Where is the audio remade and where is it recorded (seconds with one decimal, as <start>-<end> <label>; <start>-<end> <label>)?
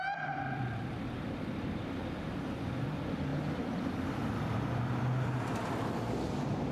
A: 0.0-1.2 remade; 1.2-2.3 recorded; 2.3-6.7 remade